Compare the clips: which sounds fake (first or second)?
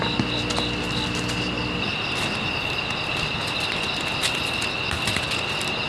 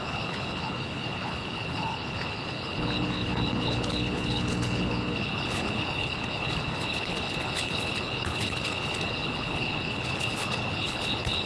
second